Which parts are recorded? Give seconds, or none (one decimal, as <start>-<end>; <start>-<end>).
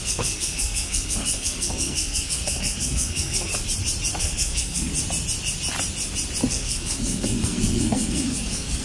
3.5-4.2; 4.9-6.5